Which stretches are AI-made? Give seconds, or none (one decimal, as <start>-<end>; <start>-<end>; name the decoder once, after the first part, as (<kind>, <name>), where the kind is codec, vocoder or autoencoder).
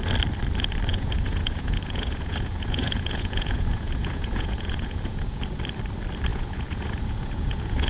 0.9-5.4 (vocoder, Vocos); 6.3-7.9